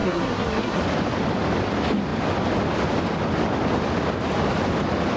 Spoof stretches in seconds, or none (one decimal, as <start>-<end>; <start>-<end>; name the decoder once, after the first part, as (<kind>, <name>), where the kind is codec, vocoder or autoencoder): 0.0-0.8 (codec, SNAC)